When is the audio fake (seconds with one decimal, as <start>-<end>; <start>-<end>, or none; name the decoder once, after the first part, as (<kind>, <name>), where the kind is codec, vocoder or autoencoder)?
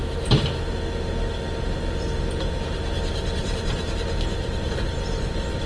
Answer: 3.4-5.7 (vocoder, BigVGAN v2)